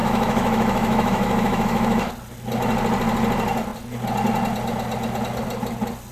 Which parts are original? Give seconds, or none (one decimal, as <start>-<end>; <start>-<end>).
2.1-6.1